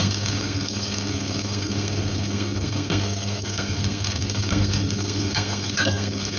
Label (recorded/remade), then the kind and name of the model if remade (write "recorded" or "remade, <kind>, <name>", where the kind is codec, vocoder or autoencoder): remade, codec, SNAC